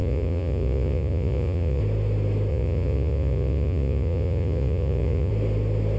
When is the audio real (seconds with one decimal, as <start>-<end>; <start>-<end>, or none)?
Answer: 1.8-2.5; 5.3-6.0